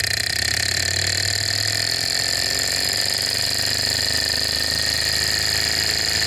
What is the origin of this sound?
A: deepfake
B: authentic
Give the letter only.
B